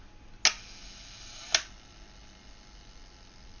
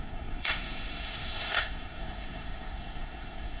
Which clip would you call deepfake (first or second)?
second